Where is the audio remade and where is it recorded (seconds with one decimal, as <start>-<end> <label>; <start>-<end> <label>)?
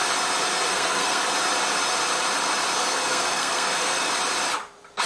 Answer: 0.0-0.7 recorded; 0.7-1.2 remade; 1.2-2.8 recorded; 2.8-4.1 remade; 4.1-5.1 recorded